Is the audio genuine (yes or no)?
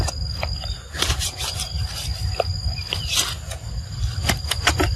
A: yes